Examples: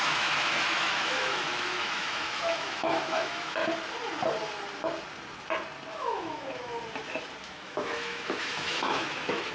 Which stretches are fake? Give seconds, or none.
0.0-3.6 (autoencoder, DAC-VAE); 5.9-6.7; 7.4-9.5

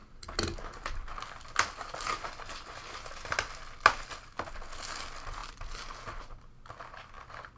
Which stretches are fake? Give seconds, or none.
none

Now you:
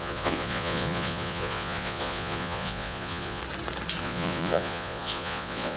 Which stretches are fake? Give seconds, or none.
0.0-3.4 (vocoder, Vocos); 4.0-5.8